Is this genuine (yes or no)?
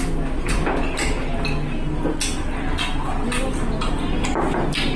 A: yes